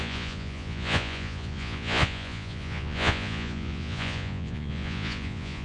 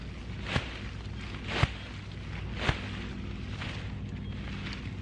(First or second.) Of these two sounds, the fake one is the first